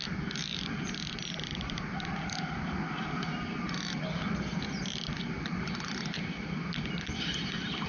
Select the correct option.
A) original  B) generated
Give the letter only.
A